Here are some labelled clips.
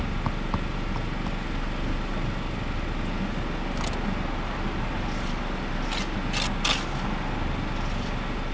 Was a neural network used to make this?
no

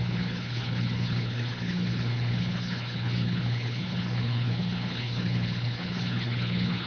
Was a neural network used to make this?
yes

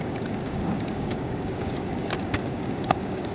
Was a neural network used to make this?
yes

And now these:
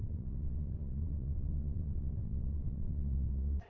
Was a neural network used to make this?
yes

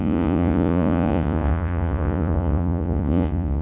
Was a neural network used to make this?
yes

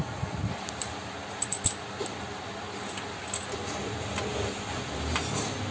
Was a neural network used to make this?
no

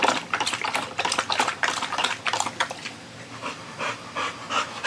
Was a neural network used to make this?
no